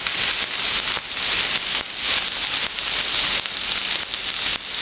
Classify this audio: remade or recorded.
recorded